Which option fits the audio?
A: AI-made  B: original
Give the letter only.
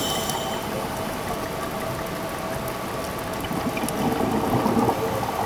B